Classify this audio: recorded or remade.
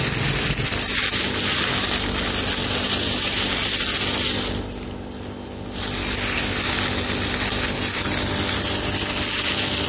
recorded